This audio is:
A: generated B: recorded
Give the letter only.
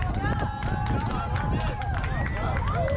B